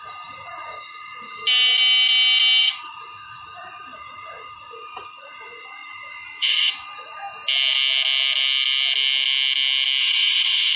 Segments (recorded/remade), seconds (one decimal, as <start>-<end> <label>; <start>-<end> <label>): 0.0-1.4 remade; 1.4-2.6 recorded; 2.6-7.2 remade; 7.2-10.0 recorded; 10.0-10.8 remade